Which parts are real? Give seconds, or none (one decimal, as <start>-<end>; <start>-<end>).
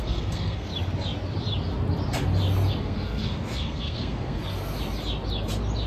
0.7-2.8; 4.4-5.9